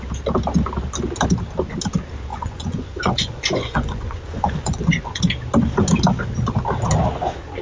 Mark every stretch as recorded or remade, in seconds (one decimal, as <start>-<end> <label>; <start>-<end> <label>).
0.0-2.3 recorded; 2.3-5.2 remade; 5.2-7.6 recorded